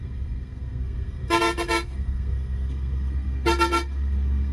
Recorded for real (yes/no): no